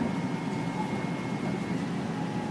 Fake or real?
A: real